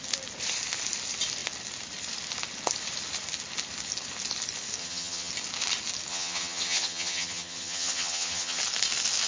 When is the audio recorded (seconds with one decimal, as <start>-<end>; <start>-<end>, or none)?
0.0-4.8; 5.3-6.1; 8.6-9.3